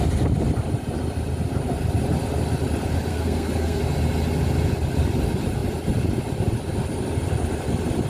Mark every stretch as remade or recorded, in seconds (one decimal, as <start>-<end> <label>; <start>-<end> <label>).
0.0-3.1 recorded; 3.1-3.8 remade; 3.8-8.1 recorded